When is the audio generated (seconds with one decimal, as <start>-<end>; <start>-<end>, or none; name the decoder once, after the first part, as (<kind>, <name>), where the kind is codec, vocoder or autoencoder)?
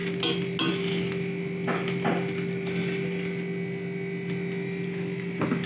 none